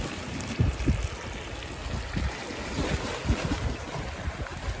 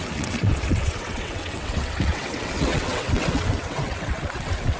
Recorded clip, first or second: first